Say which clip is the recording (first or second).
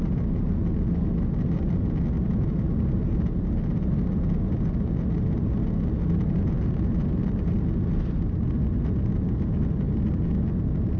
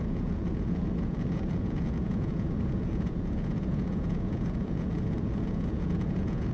first